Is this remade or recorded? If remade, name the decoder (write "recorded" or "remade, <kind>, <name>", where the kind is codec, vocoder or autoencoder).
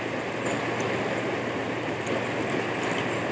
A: recorded